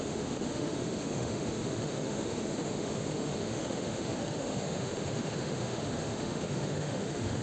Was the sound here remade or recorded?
remade